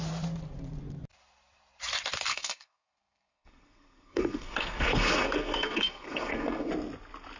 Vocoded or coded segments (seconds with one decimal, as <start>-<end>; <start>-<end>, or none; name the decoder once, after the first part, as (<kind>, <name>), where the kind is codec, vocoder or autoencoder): 2.3-6.7 (codec, SNAC)